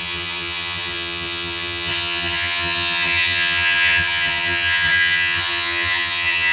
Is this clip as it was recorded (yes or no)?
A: no